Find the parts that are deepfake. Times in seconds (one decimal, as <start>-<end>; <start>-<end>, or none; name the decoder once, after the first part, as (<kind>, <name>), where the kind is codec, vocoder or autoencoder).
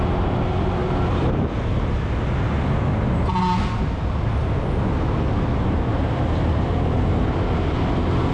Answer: none